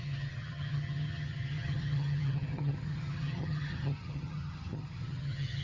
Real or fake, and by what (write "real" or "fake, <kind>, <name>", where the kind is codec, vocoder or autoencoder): fake, vocoder, HiFi-GAN